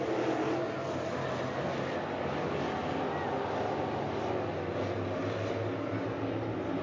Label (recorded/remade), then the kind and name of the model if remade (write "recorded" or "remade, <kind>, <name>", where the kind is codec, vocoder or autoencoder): recorded